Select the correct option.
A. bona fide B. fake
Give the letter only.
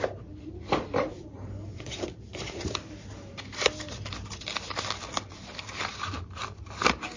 B